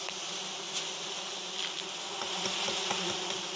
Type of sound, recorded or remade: recorded